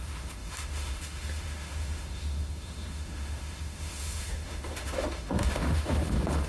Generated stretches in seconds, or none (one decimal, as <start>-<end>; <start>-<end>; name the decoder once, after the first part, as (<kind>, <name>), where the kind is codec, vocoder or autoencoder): 0.0-6.5 (autoencoder, DAC-VAE)

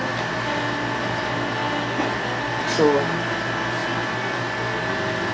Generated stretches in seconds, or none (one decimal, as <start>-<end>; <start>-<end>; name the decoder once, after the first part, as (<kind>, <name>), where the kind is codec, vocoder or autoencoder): none

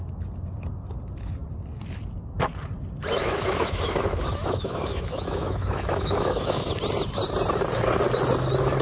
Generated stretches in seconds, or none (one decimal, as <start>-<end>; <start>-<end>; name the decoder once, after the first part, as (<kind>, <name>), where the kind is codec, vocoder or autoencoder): 3.2-6.7 (autoencoder, DAC-VAE)